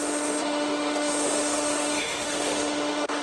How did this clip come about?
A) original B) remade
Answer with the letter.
B